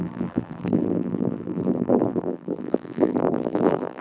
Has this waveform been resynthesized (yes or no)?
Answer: yes